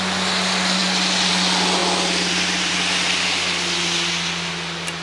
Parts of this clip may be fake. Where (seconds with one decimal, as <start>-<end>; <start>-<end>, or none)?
none